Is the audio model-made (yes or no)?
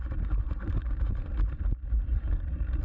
yes